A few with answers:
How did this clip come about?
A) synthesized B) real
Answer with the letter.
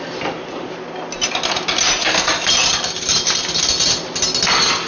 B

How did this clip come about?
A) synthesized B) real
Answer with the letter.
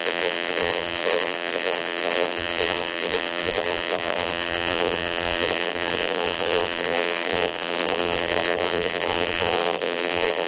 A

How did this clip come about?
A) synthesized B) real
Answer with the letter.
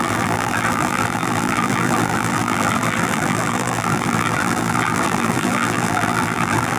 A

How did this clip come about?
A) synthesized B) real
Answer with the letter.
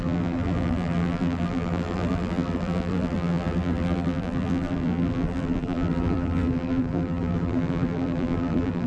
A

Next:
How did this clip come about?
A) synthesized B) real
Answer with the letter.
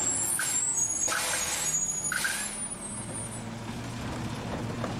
B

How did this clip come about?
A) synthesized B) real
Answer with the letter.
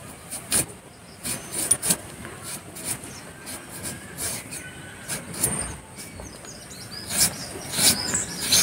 B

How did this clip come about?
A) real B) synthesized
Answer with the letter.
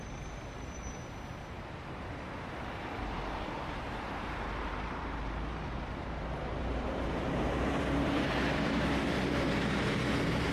B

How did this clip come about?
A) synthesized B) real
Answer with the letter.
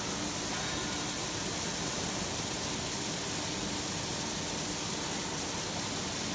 B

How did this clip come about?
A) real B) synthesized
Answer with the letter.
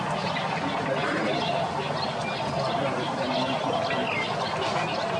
A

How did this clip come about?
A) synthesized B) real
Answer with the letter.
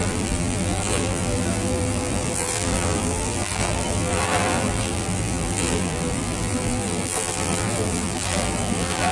A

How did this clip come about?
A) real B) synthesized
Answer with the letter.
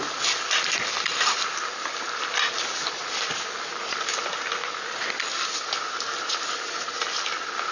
A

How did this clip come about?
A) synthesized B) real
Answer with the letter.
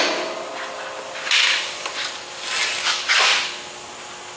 B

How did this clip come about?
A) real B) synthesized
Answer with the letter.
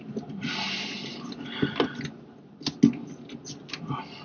A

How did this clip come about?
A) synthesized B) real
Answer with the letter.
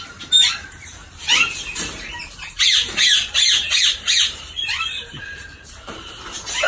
A